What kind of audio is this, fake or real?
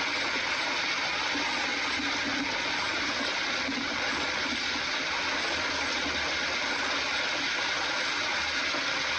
real